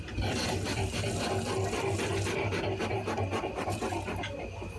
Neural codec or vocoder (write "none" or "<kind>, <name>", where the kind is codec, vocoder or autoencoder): none